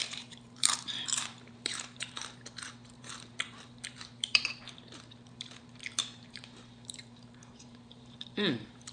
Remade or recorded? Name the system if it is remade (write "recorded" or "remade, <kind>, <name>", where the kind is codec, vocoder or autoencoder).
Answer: remade, vocoder, BigVGAN v2